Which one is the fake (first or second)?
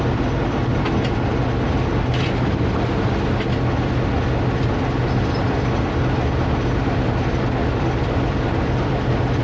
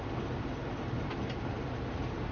second